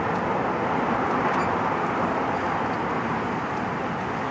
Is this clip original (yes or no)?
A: yes